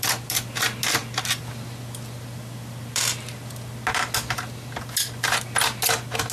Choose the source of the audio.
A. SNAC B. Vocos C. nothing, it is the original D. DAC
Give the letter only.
C